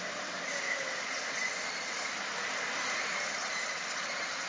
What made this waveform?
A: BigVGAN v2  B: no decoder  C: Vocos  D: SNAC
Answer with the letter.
B